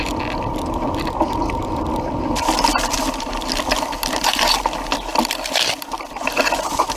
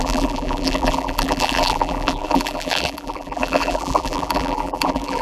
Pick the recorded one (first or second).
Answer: first